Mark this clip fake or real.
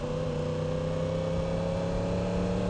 real